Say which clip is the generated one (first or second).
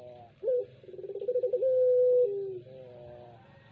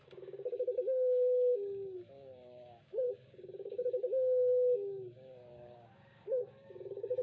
second